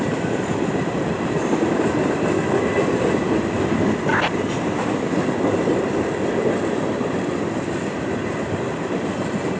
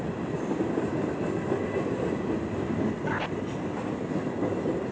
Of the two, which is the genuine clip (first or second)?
second